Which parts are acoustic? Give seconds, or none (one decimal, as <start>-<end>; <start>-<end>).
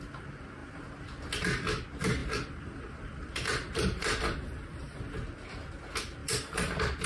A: 0.0-0.6; 1.3-2.2; 5.0-6.2